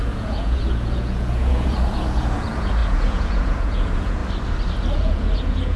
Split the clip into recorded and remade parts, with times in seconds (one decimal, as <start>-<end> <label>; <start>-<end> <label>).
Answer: 0.0-4.2 remade; 4.2-4.9 recorded; 4.9-5.8 remade